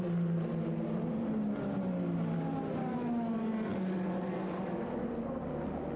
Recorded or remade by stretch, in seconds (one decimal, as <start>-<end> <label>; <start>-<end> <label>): 0.0-6.0 recorded